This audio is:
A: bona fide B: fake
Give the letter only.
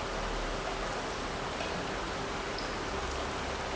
A